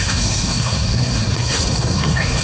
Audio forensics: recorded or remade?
remade